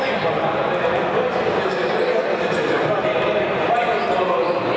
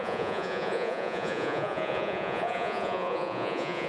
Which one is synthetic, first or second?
second